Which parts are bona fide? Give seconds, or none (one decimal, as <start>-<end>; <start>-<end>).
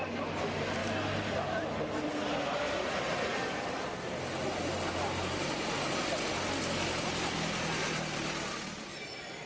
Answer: 0.0-9.5